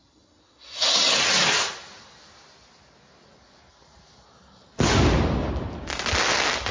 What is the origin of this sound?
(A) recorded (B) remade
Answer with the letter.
A